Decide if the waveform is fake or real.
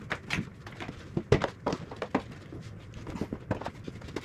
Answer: real